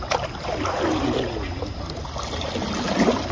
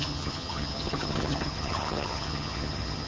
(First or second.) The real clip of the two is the first